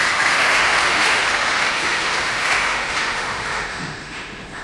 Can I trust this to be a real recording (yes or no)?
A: no